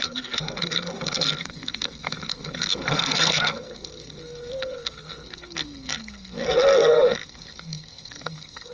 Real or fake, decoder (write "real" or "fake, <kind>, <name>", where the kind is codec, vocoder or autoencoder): fake, codec, SNAC